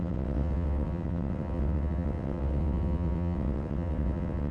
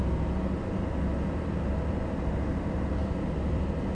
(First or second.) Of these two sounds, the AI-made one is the first